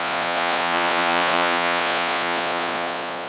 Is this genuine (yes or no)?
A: no